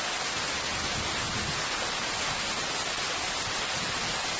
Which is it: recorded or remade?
recorded